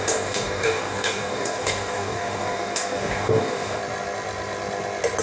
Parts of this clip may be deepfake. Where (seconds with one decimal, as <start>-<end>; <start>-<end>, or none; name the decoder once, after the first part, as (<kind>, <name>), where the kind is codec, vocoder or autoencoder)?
0.0-3.8 (codec, DAC)